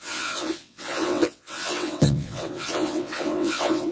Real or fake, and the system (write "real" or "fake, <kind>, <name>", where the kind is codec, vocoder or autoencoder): fake, vocoder, WaveNeXt